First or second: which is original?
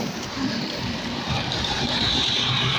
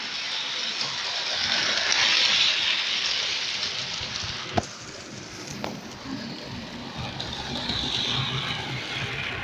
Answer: second